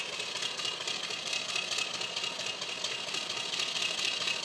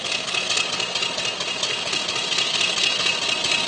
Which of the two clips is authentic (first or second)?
second